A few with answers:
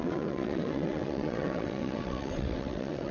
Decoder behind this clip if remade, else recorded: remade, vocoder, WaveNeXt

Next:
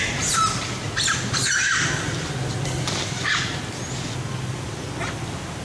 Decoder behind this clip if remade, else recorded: recorded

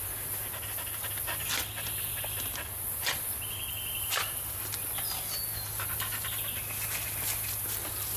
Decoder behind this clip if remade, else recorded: recorded